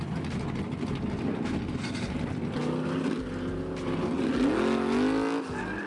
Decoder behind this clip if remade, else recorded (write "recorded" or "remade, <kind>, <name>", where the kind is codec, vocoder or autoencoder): recorded